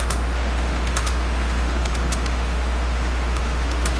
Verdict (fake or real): fake